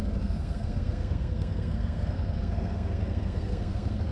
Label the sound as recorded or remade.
remade